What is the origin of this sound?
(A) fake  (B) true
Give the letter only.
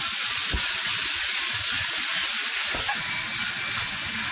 B